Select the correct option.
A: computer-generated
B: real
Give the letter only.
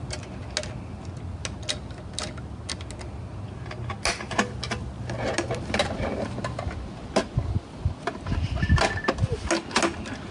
B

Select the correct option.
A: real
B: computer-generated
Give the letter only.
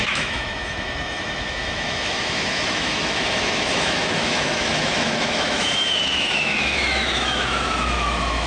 B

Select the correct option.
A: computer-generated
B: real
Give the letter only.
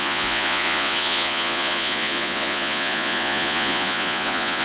A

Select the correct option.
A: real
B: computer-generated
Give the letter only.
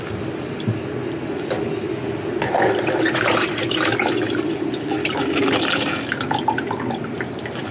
A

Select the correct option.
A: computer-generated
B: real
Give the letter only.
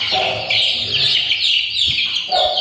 B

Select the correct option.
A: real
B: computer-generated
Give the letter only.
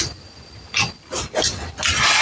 A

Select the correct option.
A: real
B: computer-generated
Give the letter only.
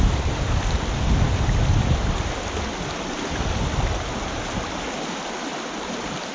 A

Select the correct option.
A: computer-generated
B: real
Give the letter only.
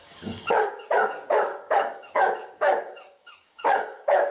A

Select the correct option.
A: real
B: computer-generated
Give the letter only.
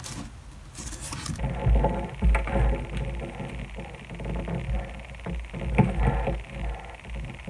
A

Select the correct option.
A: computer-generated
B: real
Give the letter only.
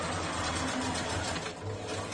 B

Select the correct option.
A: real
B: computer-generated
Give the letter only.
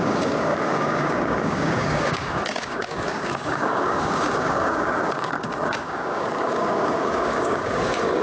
B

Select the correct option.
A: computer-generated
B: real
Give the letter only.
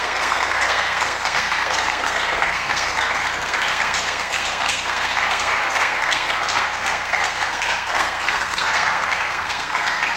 A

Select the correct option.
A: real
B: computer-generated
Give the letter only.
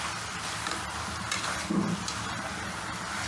A